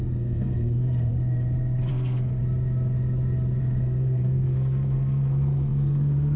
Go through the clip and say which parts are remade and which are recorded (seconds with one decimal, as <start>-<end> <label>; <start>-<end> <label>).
0.0-1.1 remade; 1.1-1.9 recorded; 1.9-2.4 remade; 2.4-3.6 recorded; 3.6-6.4 remade